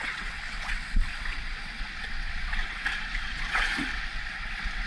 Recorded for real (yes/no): no